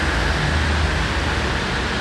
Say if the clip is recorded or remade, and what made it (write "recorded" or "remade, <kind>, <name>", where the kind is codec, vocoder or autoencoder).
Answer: recorded